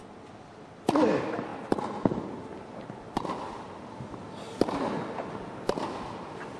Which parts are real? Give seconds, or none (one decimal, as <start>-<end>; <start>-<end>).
0.0-6.6